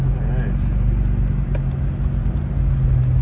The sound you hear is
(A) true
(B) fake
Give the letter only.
A